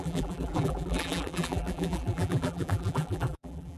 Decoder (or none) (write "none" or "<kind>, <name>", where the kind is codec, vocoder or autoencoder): vocoder, BigVGAN v2